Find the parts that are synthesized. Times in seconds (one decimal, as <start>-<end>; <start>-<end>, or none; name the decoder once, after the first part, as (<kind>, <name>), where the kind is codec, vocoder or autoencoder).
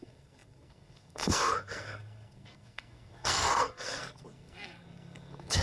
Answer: 0.0-5.6 (codec, SNAC)